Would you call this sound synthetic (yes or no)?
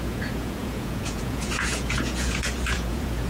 yes